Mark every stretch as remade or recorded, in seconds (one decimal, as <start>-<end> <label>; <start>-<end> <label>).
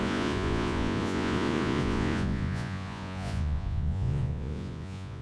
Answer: 0.0-5.2 remade